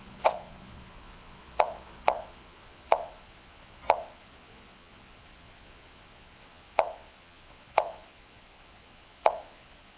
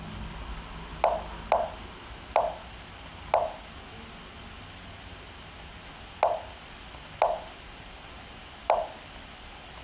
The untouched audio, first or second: second